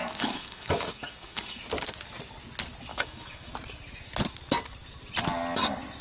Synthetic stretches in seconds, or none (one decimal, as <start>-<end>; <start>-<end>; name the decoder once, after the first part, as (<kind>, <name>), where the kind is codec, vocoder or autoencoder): 0.0-1.6 (autoencoder, DAC-VAE); 2.9-3.5